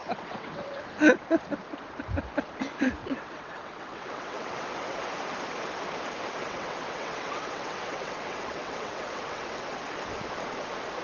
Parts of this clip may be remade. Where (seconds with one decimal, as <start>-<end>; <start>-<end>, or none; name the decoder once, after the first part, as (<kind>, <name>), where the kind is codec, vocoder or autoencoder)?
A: 0.0-0.9 (vocoder, WaveNeXt); 3.0-5.1; 6.4-9.8